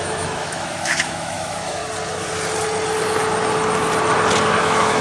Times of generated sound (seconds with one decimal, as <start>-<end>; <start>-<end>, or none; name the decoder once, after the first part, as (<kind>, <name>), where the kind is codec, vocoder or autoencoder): 0.0-1.8 (autoencoder, DAC-VAE); 4.6-5.0